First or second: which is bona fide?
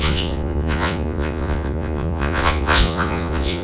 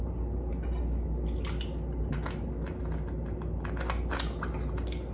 second